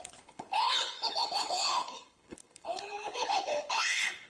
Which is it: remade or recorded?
remade